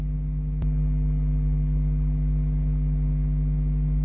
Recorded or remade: recorded